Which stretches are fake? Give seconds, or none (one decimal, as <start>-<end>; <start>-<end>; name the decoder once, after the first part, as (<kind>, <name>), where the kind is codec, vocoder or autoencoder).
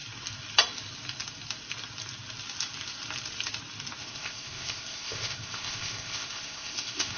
4.0-7.2 (codec, ZipCodec)